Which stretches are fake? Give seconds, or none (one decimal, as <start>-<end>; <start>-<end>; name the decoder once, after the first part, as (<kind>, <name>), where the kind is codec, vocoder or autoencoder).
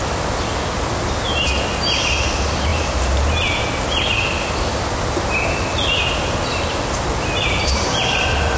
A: none